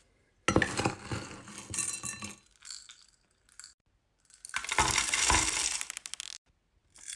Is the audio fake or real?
real